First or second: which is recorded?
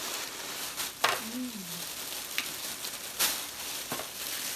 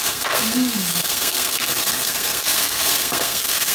first